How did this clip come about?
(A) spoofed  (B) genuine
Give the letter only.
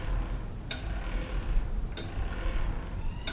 B